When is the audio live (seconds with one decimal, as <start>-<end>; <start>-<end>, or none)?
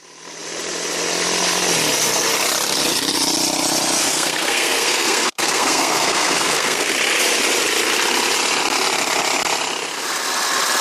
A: 0.0-4.0; 6.9-10.8